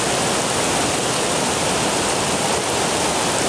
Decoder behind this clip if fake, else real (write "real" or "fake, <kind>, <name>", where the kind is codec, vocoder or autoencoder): real